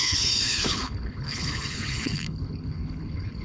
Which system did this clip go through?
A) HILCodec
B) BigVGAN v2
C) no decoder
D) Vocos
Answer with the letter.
A